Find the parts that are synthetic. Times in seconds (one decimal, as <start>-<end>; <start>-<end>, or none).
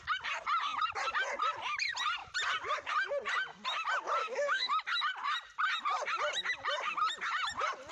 4.2-4.7